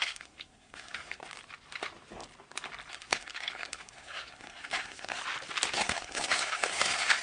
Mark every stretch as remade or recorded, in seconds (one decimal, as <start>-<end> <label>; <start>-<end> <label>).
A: 0.0-1.2 remade; 1.2-2.9 recorded; 2.9-5.2 remade; 5.2-5.7 recorded; 5.7-7.2 remade